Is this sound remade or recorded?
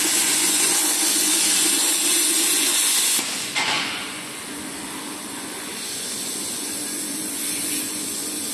remade